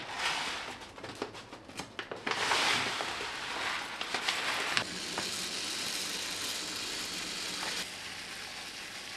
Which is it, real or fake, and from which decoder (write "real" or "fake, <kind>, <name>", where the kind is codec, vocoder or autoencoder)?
real